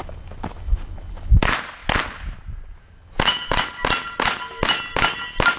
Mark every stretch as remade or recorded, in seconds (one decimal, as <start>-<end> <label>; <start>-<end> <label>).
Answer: 0.0-5.6 recorded